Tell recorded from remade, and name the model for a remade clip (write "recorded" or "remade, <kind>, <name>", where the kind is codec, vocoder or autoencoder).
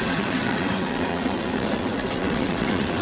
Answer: remade, vocoder, WaveNeXt